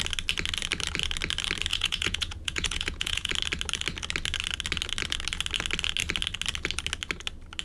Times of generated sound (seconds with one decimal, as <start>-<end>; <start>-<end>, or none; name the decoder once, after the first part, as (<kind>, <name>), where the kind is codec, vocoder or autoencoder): 1.7-3.3 (vocoder, Vocos)